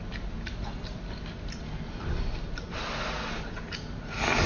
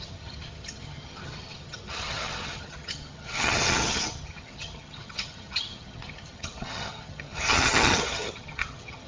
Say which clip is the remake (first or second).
second